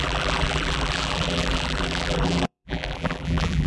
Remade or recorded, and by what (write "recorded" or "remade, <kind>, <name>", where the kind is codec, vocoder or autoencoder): remade, vocoder, BigVGAN v2